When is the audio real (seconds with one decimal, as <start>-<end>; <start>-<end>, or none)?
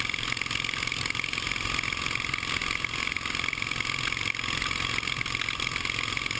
0.0-6.4